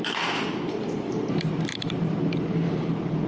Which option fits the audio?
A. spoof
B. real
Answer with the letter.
A